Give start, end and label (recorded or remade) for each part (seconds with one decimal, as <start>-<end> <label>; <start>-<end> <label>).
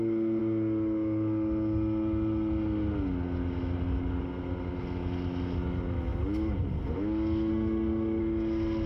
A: 0.0-7.5 recorded; 7.5-8.2 remade; 8.2-8.9 recorded